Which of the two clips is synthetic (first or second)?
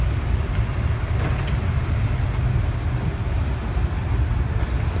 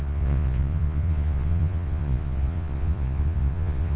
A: second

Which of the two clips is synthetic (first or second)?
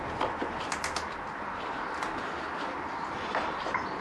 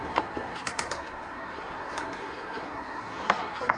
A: second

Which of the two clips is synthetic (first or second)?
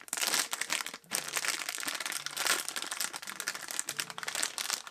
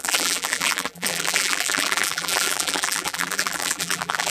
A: second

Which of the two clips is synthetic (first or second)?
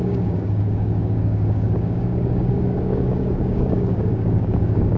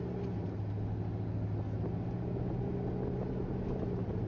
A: first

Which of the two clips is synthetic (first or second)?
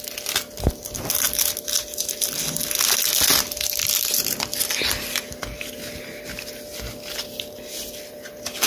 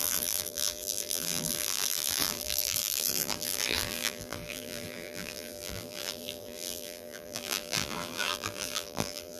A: second